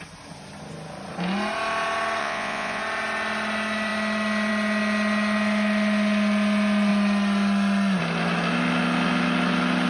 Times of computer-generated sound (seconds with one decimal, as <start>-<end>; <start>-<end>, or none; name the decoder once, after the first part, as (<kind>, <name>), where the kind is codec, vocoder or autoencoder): 2.2-2.8 (vocoder, Vocos)